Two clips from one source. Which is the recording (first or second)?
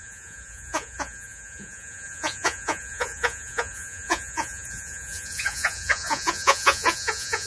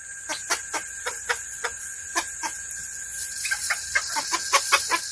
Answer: second